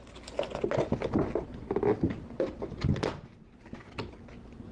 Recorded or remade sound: recorded